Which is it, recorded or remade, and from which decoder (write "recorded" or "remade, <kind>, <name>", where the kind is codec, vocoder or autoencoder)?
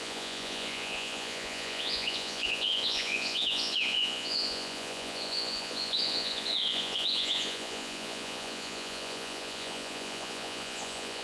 remade, vocoder, Vocos